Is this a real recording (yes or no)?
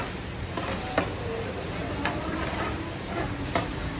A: yes